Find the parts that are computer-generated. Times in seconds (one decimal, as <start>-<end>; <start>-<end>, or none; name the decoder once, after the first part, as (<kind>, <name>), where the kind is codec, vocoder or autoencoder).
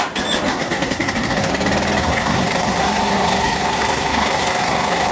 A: 0.5-1.5 (codec, SNAC); 2.0-5.1